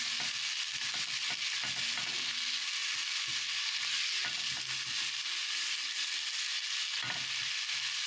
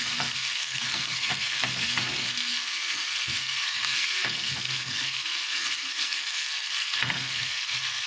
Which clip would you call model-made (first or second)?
second